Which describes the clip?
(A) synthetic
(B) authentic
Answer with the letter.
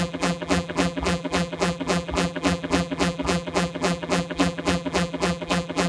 A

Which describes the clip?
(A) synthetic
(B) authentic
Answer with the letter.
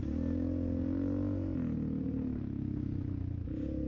B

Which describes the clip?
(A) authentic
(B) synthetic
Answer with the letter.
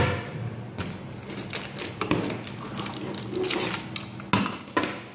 A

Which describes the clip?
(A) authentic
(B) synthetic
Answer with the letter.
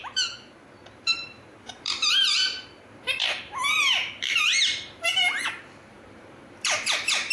B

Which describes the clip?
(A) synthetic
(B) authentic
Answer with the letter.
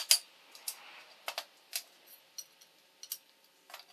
B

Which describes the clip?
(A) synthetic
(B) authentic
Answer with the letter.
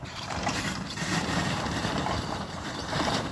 A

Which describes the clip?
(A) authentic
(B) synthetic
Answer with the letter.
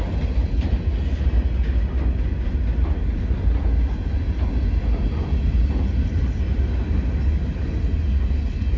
A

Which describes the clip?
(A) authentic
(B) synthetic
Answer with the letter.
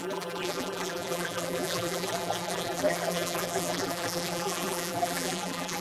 B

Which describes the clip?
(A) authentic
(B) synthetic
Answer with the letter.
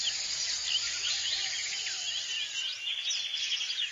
A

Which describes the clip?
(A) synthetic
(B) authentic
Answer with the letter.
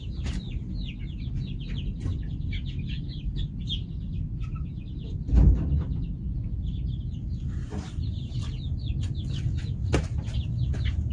B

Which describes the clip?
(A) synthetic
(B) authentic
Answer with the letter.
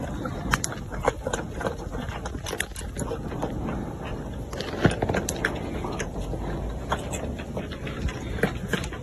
B